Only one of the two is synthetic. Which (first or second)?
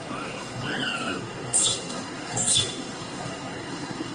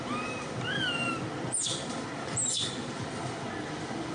first